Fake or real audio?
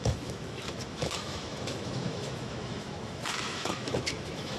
fake